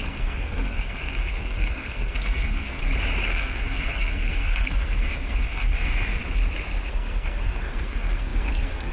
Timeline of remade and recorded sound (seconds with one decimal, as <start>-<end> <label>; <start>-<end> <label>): 0.0-2.8 remade; 2.8-3.3 recorded; 3.3-6.2 remade; 6.2-6.9 recorded; 6.9-8.9 remade